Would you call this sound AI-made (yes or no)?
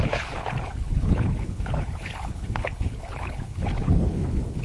yes